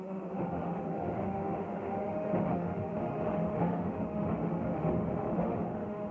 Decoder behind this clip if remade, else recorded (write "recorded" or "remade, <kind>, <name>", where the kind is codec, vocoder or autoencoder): remade, autoencoder, DAC-VAE